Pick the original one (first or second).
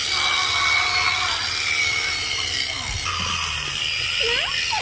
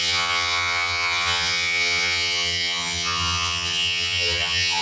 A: first